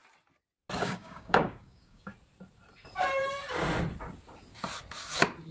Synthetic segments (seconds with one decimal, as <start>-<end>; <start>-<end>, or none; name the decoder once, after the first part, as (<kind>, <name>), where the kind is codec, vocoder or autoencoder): 0.8-2.1 (codec, DAC)